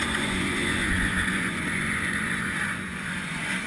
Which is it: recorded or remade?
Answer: remade